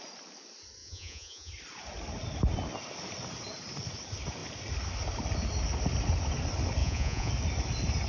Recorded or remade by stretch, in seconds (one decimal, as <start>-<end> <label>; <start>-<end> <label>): 0.0-0.8 recorded; 0.8-1.5 remade; 1.5-6.8 recorded; 6.8-7.3 remade; 7.3-8.1 recorded